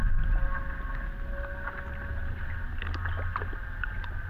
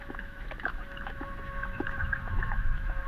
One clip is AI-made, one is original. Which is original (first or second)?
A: first